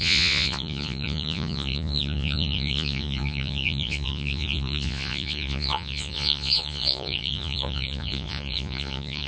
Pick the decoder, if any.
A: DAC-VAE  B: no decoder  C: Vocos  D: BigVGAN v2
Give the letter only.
C